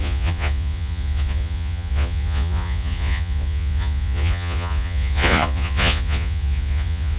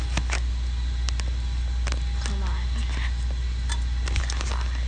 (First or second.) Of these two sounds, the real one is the second